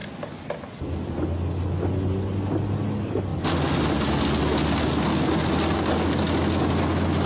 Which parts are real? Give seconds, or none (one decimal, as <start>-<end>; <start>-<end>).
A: 0.0-7.3